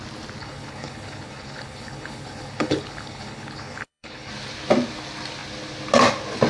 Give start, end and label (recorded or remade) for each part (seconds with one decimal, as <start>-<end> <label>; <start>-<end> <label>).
0.0-0.4 recorded; 0.4-4.3 remade; 4.3-6.5 recorded